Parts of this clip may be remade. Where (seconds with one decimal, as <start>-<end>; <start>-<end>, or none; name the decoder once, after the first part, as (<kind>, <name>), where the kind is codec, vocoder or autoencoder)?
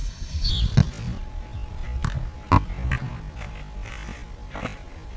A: 0.0-0.5 (codec, SNAC)